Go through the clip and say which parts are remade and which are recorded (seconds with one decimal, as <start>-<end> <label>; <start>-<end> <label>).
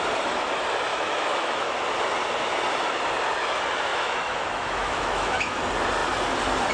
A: 0.0-0.9 recorded; 0.9-1.7 remade; 1.7-3.9 recorded; 3.9-5.6 remade; 5.6-6.7 recorded